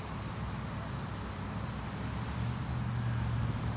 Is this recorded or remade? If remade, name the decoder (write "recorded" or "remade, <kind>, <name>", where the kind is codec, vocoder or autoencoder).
recorded